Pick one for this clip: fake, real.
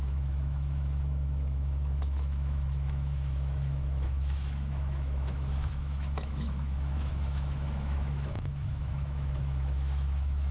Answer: fake